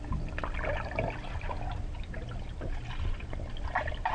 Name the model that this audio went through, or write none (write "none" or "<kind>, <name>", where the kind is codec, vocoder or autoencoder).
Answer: none